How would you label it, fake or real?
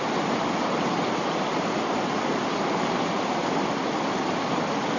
real